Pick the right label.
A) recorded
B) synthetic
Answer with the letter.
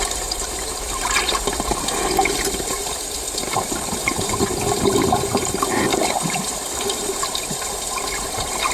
B